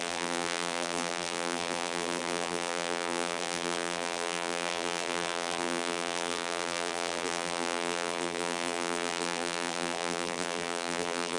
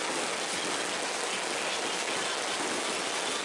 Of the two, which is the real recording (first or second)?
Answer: second